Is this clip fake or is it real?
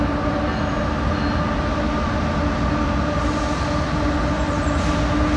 real